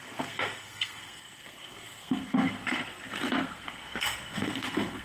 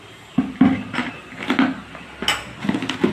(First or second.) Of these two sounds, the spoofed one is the first